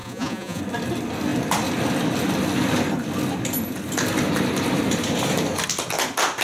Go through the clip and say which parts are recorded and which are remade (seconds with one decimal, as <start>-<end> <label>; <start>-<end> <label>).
0.0-0.6 remade; 0.6-6.4 recorded